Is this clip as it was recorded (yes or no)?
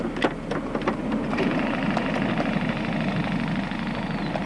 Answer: yes